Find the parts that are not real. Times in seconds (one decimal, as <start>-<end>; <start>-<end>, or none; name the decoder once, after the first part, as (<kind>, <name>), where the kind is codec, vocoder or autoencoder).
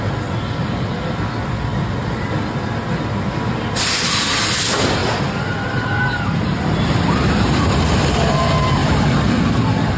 8.8-9.4 (vocoder, BigVGAN v2)